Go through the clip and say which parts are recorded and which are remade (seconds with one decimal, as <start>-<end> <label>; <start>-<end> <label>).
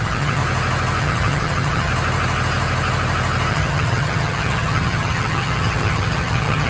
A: 0.0-0.4 remade; 0.4-1.0 recorded; 1.0-1.9 remade; 1.9-3.5 recorded; 3.5-6.7 remade